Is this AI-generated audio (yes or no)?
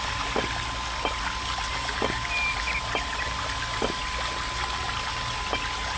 no